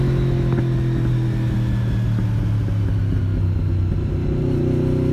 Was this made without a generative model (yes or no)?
yes